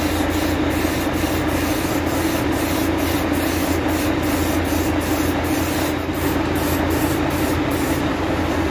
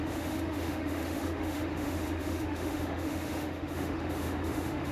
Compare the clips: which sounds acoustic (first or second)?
first